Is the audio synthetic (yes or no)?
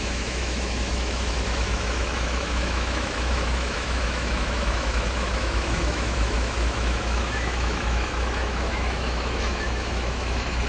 yes